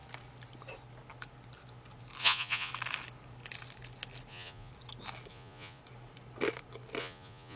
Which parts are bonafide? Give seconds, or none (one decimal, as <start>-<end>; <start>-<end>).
0.0-2.2; 2.7-4.3; 4.7-5.3; 5.8-7.0